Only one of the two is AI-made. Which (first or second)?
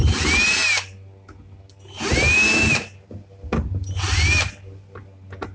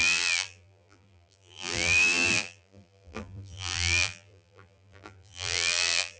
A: second